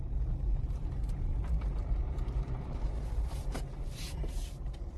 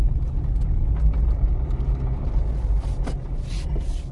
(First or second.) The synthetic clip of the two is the first